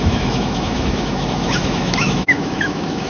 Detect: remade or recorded remade